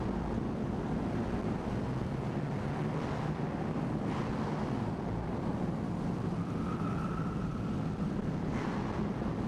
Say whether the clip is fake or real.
fake